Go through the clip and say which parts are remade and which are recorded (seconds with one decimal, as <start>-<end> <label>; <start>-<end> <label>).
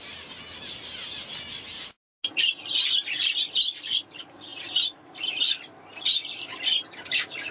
0.0-7.5 recorded